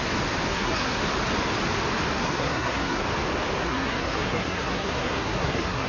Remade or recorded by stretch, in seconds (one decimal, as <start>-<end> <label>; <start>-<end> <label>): 0.0-0.5 recorded; 0.5-1.0 remade; 1.0-2.1 recorded; 2.1-3.0 remade; 3.0-3.6 recorded; 3.6-5.9 remade